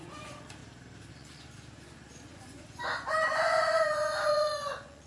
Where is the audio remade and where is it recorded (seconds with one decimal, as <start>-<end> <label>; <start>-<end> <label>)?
0.0-0.6 remade; 0.6-1.1 recorded; 1.1-5.1 remade